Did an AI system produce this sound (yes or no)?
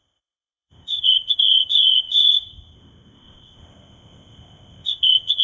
yes